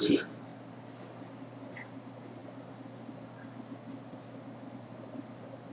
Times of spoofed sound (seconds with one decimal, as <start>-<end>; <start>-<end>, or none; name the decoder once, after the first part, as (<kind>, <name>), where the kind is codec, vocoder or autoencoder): none